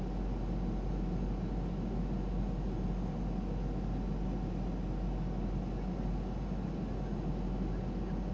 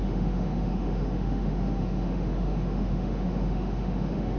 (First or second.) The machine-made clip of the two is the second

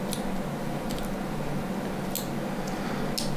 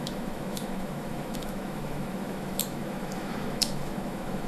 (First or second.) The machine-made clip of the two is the second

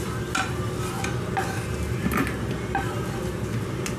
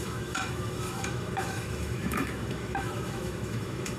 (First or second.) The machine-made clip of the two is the second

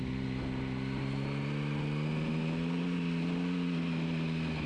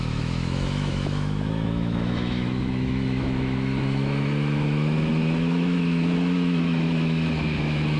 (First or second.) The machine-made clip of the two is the second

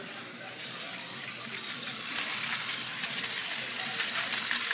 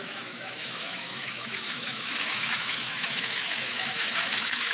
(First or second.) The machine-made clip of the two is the second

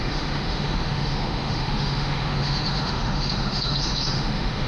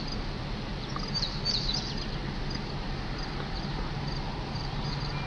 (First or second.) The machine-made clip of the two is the first